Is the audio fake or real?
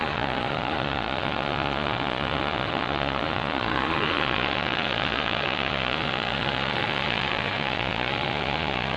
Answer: fake